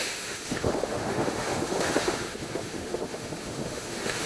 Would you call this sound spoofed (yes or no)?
yes